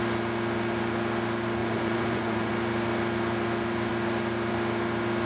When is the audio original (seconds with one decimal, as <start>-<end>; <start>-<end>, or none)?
0.0-1.6; 2.5-5.3